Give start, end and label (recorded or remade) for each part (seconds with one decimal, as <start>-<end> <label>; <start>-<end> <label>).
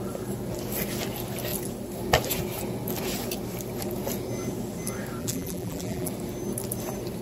0.0-5.2 recorded; 5.2-6.1 remade; 6.1-7.2 recorded